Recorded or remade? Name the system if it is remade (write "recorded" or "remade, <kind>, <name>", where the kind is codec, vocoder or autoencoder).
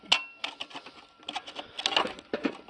recorded